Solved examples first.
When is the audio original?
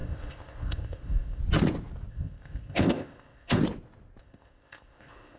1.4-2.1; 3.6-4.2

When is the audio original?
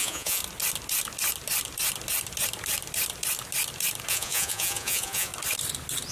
0.4-4.1; 5.3-6.1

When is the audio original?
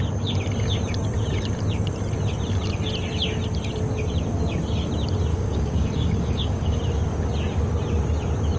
0.0-5.3; 6.8-8.6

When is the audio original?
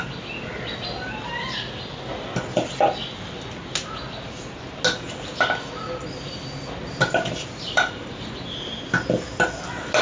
0.0-6.9; 8.8-10.0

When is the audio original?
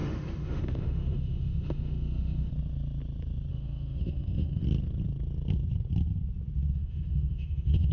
2.5-3.5; 4.6-6.7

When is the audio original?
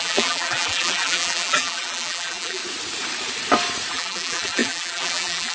2.6-3.9